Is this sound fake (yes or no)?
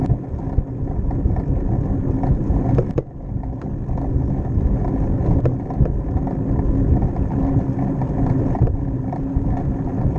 no